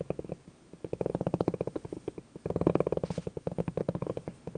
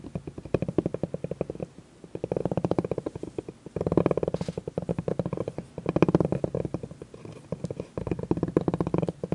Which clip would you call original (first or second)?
second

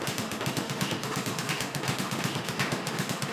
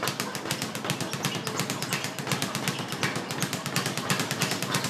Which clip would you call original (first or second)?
second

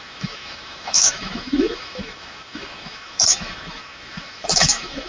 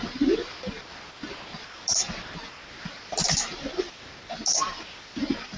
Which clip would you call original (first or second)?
second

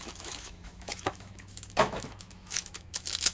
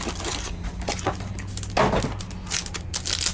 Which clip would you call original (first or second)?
second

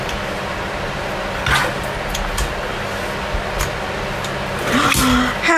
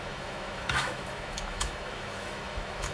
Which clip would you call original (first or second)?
first